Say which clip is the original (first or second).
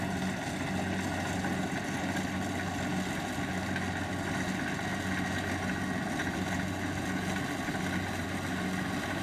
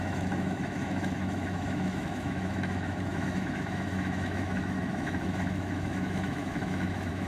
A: first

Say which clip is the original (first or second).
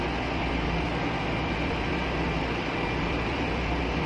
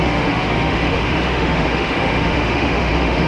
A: first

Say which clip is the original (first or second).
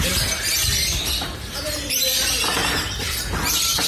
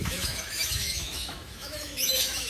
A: first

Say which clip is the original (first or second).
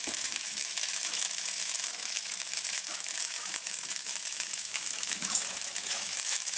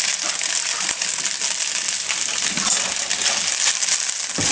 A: second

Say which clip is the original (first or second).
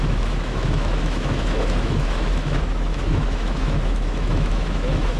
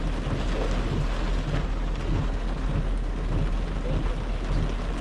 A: second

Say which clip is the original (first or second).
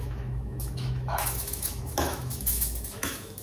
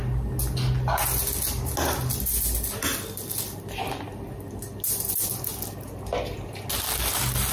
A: second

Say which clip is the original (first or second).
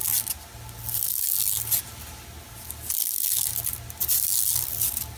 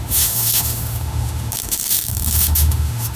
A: first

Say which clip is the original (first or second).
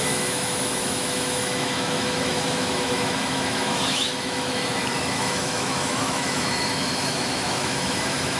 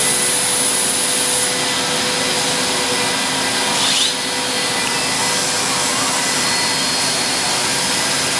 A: second